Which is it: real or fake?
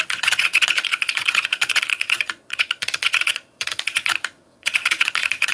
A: fake